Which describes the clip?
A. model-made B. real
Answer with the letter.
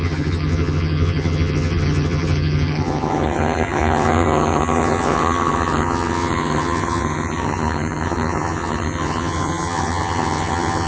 A